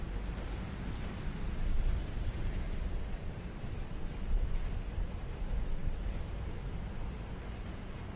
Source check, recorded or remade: remade